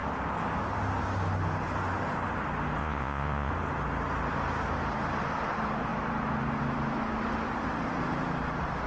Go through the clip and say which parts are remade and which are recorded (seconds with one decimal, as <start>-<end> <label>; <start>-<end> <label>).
0.0-2.8 recorded; 2.8-3.5 remade; 3.5-8.9 recorded